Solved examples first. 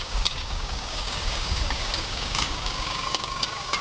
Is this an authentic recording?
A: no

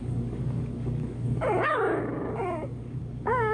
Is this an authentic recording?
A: no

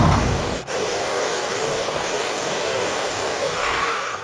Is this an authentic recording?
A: no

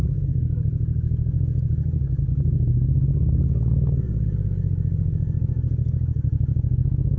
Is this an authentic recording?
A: no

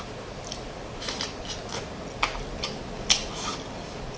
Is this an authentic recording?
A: yes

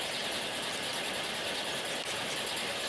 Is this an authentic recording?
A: yes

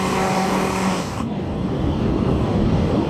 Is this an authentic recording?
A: no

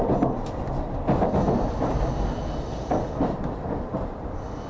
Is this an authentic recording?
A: yes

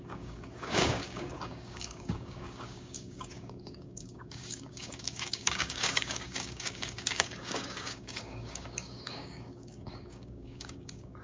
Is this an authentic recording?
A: no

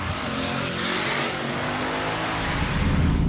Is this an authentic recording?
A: no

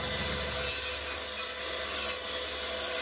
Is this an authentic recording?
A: yes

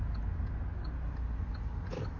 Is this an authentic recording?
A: yes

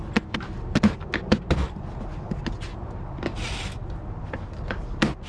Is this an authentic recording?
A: yes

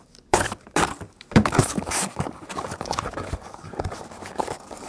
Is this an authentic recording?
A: no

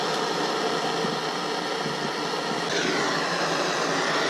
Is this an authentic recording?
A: yes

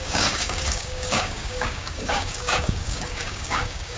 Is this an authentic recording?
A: no